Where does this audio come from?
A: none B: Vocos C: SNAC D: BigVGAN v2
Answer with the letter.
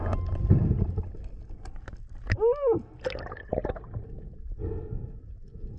A